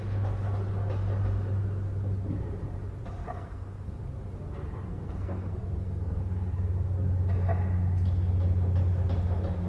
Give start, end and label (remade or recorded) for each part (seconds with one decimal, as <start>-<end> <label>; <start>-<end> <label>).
0.0-3.2 recorded; 3.2-4.0 remade; 4.0-4.9 recorded; 4.9-6.2 remade; 6.2-9.7 recorded